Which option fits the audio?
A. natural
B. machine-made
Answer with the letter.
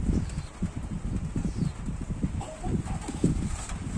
A